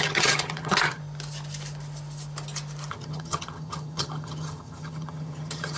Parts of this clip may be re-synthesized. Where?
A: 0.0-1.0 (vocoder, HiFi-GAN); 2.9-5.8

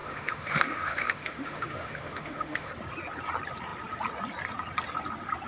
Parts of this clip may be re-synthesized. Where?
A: 0.0-2.7 (autoencoder, DAC-VAE)

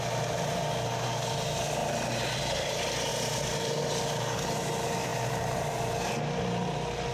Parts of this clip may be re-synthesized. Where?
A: none

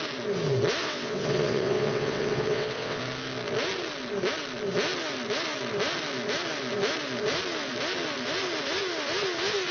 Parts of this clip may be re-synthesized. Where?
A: 0.8-3.0 (vocoder, WaveNeXt)